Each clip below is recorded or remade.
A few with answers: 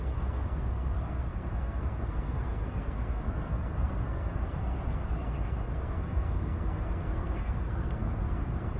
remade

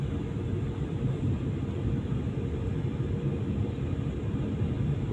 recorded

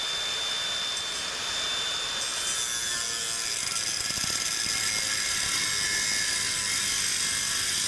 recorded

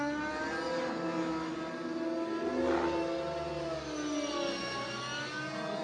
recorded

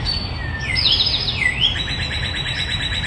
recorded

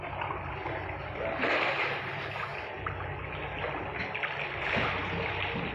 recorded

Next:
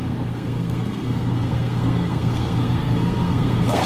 remade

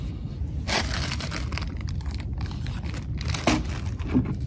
recorded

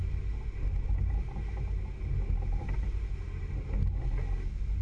recorded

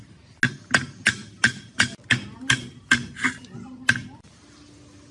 recorded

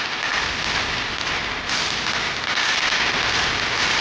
recorded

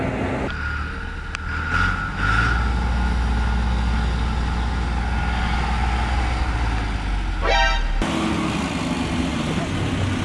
recorded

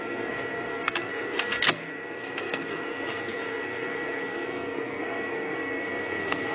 remade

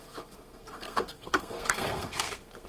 remade